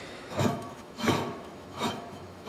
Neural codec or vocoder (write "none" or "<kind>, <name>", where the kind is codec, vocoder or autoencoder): autoencoder, DAC-VAE